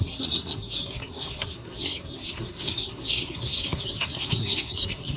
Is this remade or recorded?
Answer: remade